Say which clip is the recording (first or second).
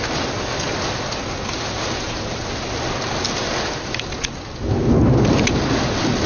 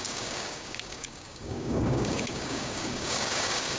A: first